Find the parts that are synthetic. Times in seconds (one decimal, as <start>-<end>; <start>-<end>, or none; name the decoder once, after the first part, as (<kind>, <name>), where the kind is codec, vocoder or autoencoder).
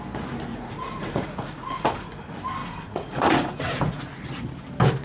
0.5-2.2 (vocoder, Vocos); 2.6-4.0